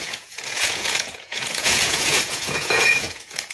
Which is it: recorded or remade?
remade